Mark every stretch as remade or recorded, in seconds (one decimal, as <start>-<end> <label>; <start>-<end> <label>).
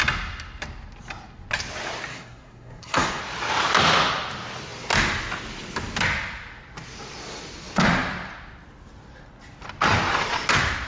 0.0-2.1 recorded; 2.1-3.2 remade; 3.2-10.9 recorded